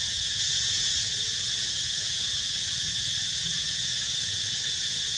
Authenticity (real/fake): fake